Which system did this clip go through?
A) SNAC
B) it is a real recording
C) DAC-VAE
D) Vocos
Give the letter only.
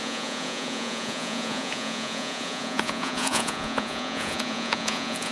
D